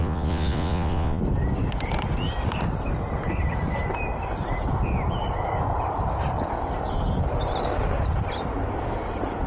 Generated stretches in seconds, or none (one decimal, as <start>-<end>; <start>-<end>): 0.0-1.2